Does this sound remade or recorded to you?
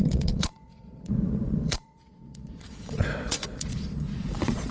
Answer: remade